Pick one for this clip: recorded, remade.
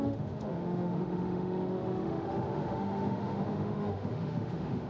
remade